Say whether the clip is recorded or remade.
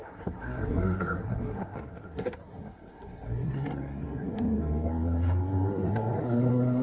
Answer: remade